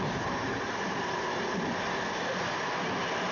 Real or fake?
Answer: real